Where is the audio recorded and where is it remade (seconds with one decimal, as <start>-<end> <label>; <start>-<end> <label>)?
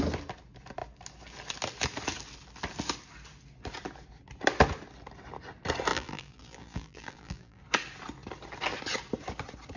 0.0-5.9 recorded; 5.9-7.6 remade; 7.6-9.8 recorded